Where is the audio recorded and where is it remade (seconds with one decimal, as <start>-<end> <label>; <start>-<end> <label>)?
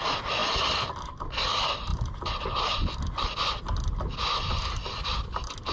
0.0-1.9 recorded; 1.9-3.1 remade; 3.1-5.7 recorded